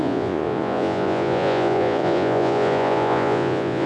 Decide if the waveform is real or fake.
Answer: fake